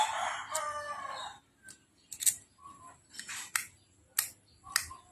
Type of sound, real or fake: real